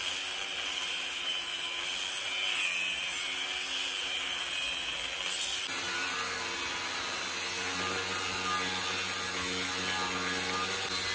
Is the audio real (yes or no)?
yes